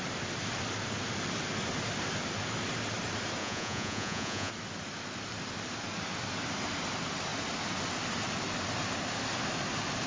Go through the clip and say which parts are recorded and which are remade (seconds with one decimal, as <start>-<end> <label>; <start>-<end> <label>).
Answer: 0.0-3.4 recorded; 3.4-4.5 remade; 4.5-10.1 recorded